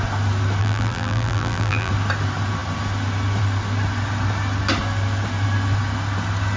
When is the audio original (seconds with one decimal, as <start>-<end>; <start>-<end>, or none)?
0.0-0.6; 1.9-6.6